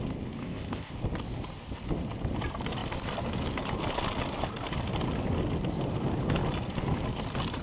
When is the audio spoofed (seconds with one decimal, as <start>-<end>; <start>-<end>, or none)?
0.4-0.9